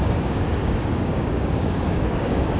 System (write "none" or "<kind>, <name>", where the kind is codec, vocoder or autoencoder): codec, DAC